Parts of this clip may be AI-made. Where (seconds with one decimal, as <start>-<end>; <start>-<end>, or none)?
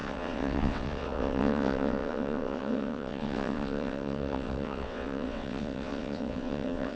0.0-7.0